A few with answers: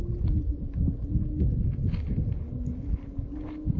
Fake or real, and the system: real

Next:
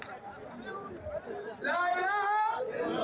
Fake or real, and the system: real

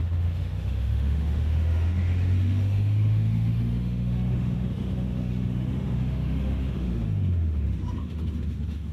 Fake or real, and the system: fake, autoencoder, DAC-VAE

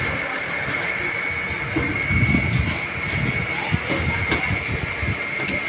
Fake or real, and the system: real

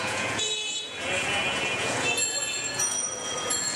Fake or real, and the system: fake, vocoder, Vocos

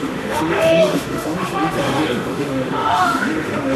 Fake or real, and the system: fake, autoencoder, DAC-VAE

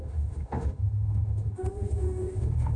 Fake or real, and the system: fake, autoencoder, DAC-VAE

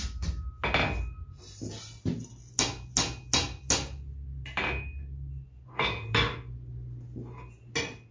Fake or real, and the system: real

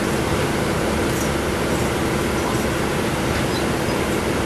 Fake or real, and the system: real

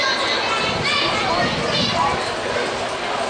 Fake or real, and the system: real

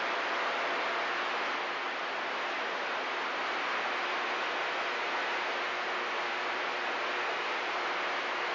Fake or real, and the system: real